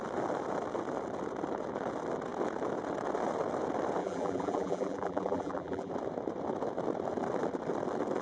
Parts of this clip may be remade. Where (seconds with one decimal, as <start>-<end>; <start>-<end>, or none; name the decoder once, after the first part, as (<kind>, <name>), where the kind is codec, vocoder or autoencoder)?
4.0-5.9 (vocoder, BigVGAN v2)